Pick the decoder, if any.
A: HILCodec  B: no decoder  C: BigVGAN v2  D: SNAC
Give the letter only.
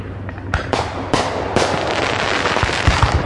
B